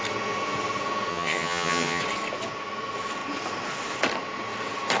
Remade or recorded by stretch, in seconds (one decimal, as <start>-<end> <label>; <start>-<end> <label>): 0.0-1.1 recorded; 1.1-2.0 remade; 2.0-5.0 recorded